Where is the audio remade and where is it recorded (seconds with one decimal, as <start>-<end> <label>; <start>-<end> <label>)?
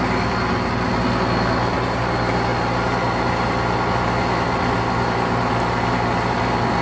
0.0-6.8 recorded